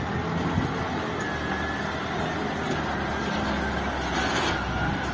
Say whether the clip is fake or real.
real